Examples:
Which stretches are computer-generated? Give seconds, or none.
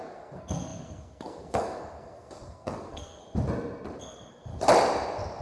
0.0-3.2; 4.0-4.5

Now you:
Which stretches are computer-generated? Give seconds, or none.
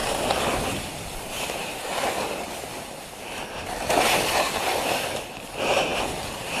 none